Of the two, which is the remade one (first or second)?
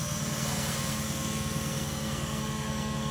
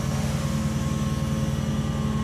first